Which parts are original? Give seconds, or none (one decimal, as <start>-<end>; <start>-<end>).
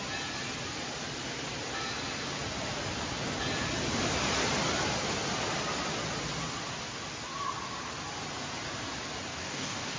0.0-9.3